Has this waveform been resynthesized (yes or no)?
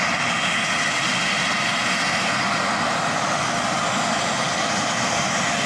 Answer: no